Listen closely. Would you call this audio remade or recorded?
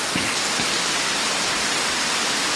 recorded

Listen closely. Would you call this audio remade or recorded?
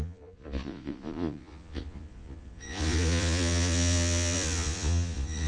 remade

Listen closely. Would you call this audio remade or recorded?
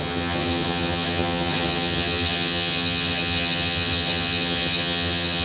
remade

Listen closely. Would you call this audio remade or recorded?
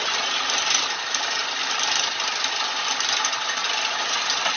recorded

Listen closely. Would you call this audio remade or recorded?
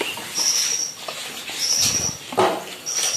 recorded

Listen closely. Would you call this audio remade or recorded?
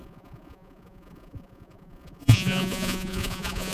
remade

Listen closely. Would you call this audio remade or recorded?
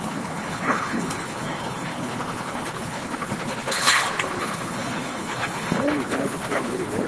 remade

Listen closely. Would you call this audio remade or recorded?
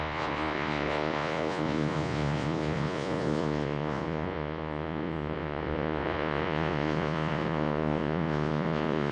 remade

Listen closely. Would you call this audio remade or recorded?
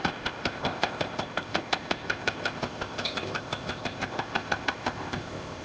remade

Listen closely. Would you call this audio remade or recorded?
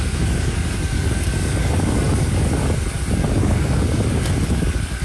remade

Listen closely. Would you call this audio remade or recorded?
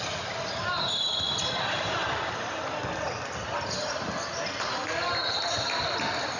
recorded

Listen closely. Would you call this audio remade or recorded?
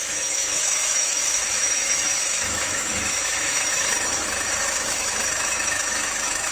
remade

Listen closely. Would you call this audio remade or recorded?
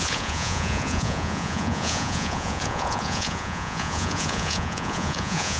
remade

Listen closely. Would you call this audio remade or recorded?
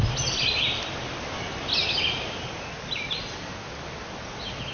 recorded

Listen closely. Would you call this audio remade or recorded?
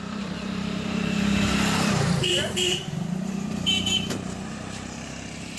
remade